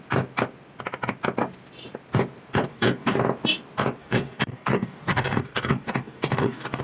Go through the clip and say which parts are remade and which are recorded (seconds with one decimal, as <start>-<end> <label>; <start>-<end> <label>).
0.0-2.7 recorded; 2.7-3.2 remade; 3.2-4.0 recorded; 4.0-6.8 remade